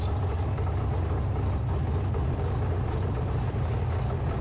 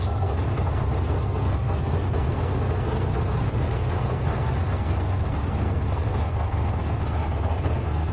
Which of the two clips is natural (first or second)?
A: first